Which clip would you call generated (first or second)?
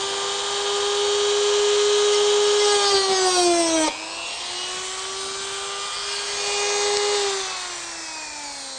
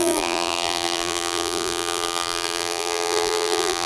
second